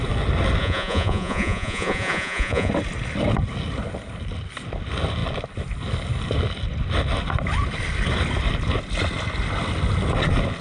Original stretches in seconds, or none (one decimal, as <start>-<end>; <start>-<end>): 0.0-0.6; 2.7-10.6